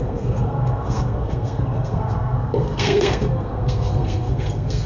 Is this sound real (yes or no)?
no